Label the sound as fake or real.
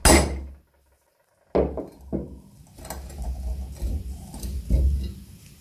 real